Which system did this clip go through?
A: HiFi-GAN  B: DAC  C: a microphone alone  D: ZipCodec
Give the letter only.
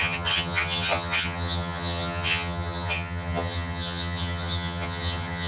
A